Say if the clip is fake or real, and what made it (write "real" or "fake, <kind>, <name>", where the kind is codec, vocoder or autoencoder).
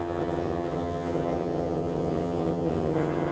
fake, vocoder, HiFi-GAN